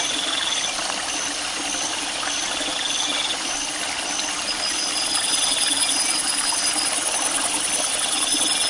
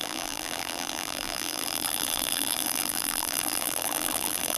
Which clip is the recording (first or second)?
first